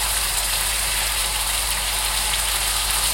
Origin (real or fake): fake